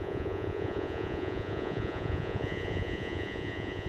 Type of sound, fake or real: fake